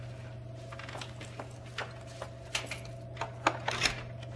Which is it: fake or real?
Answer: real